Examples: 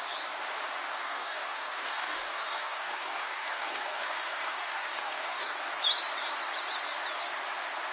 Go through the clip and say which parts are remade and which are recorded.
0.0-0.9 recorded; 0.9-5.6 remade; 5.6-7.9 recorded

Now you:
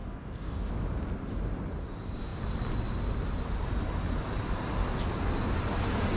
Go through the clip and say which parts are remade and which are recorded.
0.0-0.7 remade; 0.7-6.2 recorded

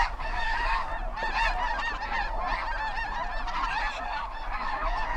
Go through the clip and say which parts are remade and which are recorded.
0.0-0.9 remade; 0.9-4.0 recorded; 4.0-5.2 remade

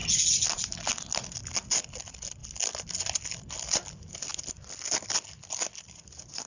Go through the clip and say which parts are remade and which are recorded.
0.0-6.5 recorded

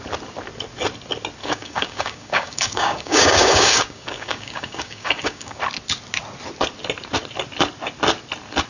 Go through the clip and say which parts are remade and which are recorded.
0.0-1.4 recorded; 1.4-5.6 remade; 5.6-8.7 recorded

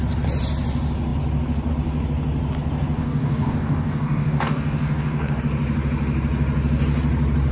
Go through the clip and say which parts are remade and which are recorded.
0.0-3.0 recorded; 3.0-5.4 remade; 5.4-7.5 recorded

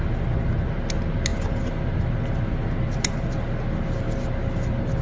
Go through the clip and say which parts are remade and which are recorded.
0.0-5.0 recorded

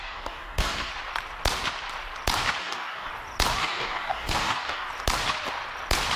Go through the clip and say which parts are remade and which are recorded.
0.0-0.9 remade; 0.9-2.6 recorded; 2.6-3.1 remade; 3.1-3.6 recorded; 3.6-4.9 remade; 4.9-6.2 recorded